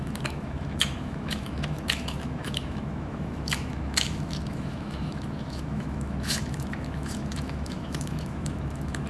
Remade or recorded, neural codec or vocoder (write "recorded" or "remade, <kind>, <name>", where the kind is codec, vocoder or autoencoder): remade, autoencoder, DAC-VAE